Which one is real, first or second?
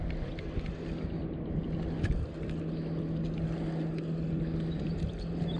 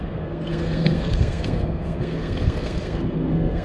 first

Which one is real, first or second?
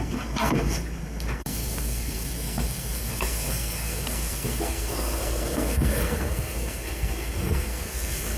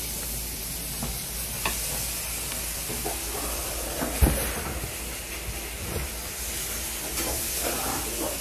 second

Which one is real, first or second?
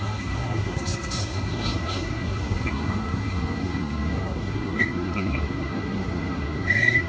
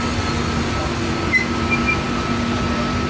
second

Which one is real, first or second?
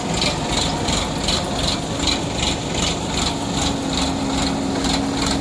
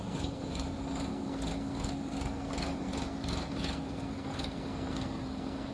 first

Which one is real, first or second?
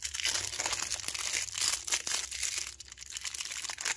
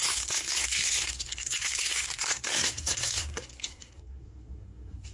first